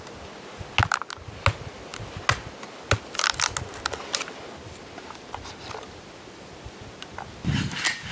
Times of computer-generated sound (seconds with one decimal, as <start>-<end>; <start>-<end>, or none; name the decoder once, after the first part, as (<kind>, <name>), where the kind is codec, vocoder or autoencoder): none